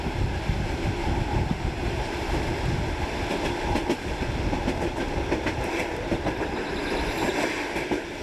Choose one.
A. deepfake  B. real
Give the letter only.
B